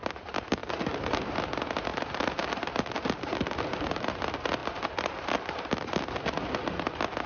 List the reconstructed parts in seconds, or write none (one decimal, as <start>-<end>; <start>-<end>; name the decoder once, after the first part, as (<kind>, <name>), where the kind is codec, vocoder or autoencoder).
0.6-1.4 (vocoder, BigVGAN v2); 1.9-4.1; 4.6-5.7